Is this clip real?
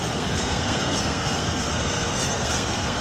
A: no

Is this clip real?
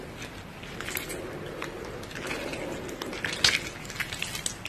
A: yes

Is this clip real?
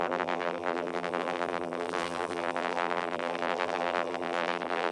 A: no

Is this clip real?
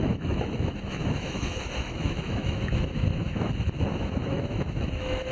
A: no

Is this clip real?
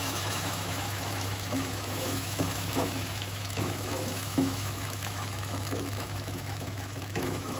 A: no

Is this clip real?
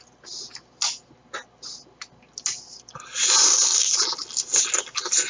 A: yes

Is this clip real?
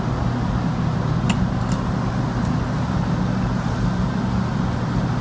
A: yes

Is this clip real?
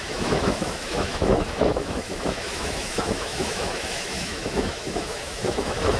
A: no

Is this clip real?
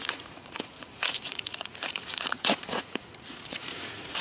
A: no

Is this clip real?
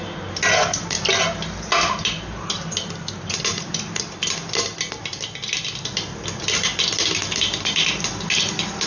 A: yes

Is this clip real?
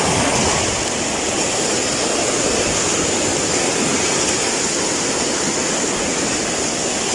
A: yes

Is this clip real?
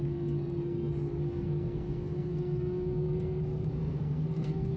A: no